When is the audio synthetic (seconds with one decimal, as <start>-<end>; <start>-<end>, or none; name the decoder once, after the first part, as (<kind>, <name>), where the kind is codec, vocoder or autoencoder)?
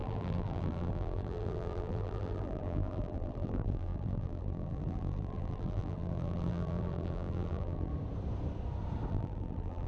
0.0-7.9 (vocoder, BigVGAN v2); 9.1-9.9